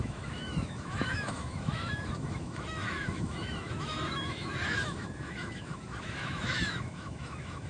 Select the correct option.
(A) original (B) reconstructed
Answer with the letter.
B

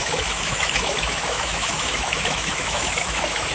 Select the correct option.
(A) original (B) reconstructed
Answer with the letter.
B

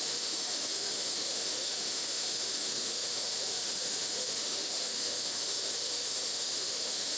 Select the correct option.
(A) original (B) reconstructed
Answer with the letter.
B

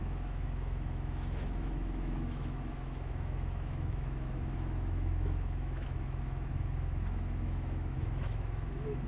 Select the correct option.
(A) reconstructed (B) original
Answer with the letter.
A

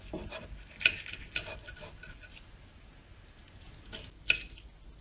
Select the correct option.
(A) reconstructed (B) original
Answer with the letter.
B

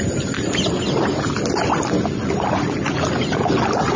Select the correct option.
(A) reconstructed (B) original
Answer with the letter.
B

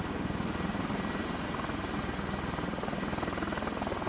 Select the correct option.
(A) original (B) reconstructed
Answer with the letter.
A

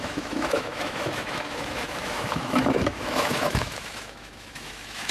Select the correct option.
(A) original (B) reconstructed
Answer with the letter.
B